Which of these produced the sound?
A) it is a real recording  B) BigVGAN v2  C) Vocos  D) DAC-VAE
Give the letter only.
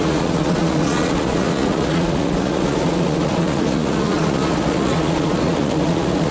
C